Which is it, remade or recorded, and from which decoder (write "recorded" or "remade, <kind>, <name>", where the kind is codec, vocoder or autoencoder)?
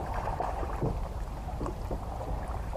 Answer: remade, vocoder, BigVGAN v2